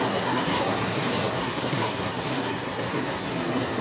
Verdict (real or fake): fake